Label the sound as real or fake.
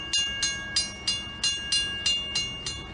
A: real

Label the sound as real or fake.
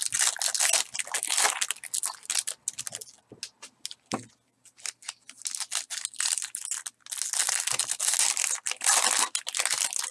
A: real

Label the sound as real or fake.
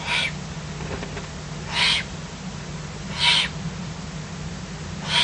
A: real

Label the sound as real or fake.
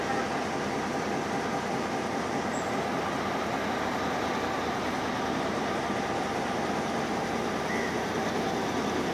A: real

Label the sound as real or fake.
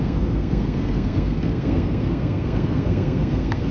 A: fake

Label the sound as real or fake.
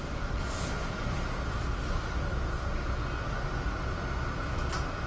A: real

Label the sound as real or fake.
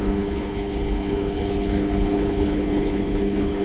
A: fake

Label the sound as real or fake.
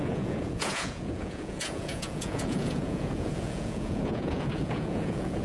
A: fake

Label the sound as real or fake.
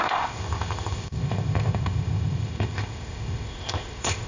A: fake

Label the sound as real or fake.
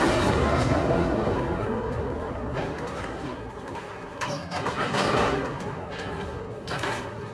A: fake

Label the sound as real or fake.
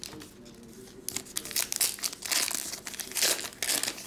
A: real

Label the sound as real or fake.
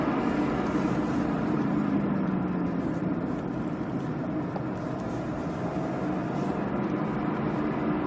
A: real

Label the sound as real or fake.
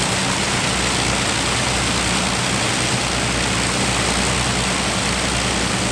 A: real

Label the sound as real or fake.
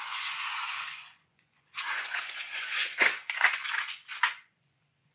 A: fake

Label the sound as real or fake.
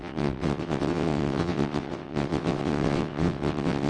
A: fake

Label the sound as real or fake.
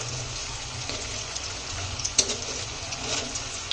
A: fake